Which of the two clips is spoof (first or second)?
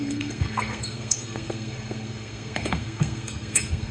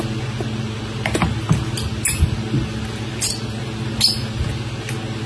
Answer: first